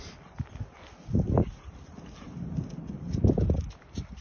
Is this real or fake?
real